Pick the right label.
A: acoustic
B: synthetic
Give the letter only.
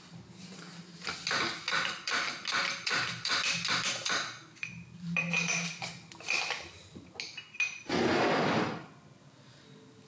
A